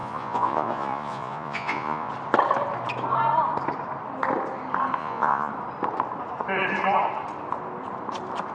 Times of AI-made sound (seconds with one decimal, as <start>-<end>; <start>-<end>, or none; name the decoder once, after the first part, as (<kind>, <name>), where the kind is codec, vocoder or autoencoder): 0.0-2.1 (vocoder, Vocos); 5.0-5.5